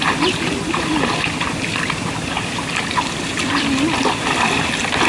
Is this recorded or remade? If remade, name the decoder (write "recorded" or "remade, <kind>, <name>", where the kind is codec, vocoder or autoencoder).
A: recorded